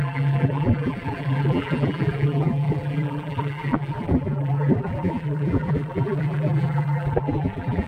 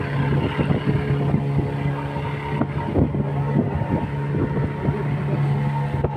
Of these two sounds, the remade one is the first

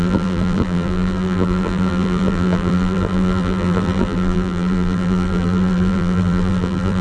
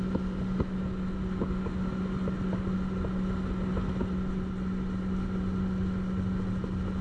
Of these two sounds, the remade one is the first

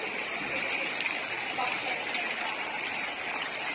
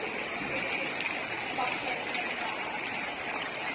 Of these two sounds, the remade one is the first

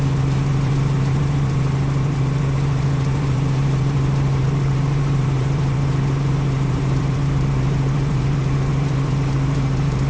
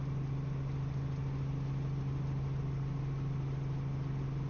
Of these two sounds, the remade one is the first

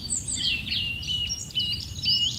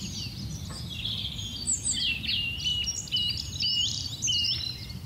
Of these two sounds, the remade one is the first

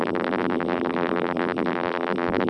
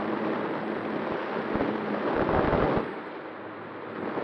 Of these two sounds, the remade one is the first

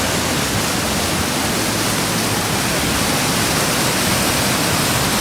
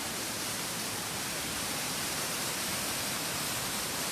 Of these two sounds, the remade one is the second